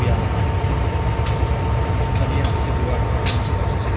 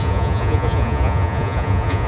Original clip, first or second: first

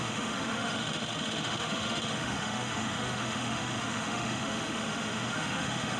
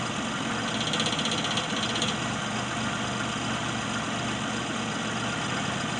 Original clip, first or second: second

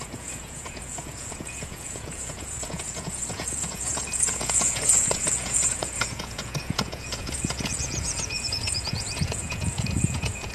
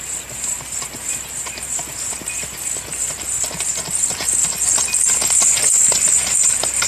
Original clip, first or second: second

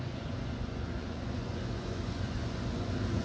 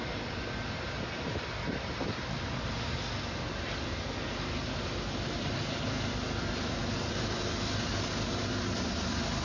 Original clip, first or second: second